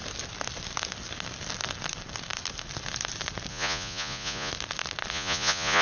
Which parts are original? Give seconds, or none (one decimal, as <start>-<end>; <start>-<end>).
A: 0.0-3.5; 4.5-5.1

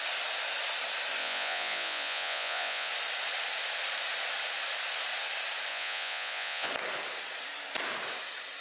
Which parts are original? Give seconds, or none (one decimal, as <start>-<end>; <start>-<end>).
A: 0.0-1.2; 2.9-5.7; 6.7-8.6

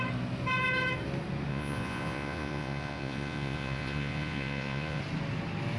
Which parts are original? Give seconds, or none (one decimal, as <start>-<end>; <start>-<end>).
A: 0.0-1.5; 5.0-5.8

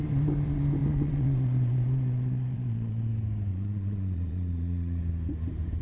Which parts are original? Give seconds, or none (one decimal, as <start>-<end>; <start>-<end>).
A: 0.0-0.8; 3.1-3.5; 5.0-5.8

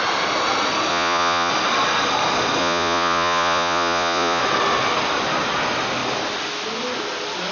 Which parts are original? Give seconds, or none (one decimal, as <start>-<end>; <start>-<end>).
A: 0.0-0.9; 1.5-2.6; 4.4-7.5

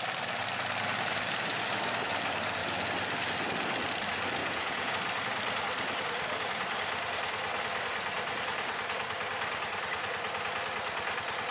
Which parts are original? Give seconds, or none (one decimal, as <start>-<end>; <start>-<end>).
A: 0.0-4.4; 4.9-11.5